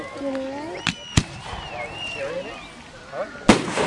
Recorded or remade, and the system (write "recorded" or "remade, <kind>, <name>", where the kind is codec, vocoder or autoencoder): recorded